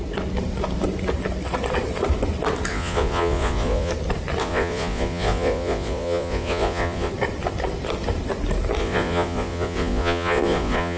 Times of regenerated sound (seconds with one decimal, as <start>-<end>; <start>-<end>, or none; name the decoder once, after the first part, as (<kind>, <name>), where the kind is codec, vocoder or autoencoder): 2.7-3.9 (vocoder, Vocos); 4.4-7.1; 8.8-11.0